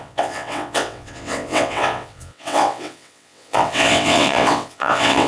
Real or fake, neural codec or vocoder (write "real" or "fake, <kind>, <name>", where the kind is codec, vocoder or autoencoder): fake, vocoder, WaveNeXt